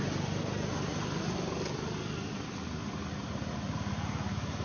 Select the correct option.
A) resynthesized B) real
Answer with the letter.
B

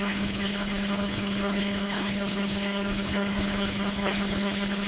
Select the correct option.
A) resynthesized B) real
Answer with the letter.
A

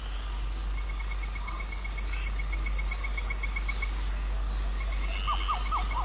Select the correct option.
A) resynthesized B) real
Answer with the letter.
B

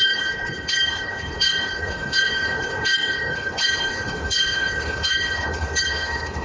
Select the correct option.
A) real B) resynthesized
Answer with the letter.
B